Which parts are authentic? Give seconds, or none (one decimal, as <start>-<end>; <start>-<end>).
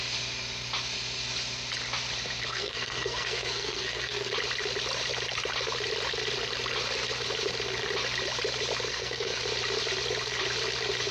0.0-2.5; 4.3-8.9; 9.4-11.1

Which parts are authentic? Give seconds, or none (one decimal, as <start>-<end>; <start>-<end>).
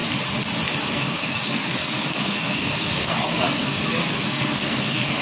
0.0-0.9